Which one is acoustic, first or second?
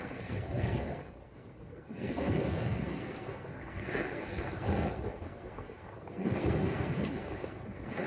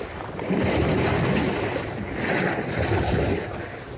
second